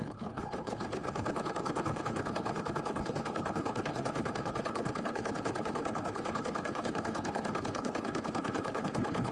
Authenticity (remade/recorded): remade